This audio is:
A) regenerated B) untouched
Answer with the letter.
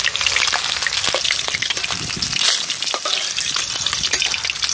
B